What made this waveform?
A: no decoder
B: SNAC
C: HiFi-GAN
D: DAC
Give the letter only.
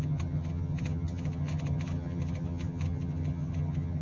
C